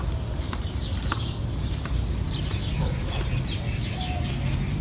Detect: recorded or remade recorded